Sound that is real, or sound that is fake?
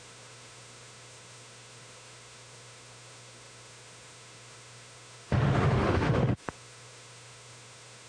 fake